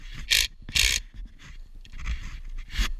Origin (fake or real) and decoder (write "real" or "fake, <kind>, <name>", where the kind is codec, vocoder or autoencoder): real